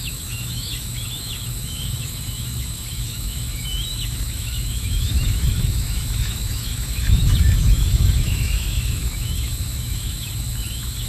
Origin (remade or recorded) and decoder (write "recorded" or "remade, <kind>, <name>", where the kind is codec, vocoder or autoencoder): remade, autoencoder, DAC-VAE